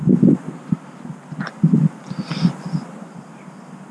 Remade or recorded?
recorded